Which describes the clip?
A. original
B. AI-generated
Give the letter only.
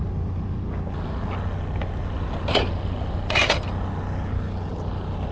A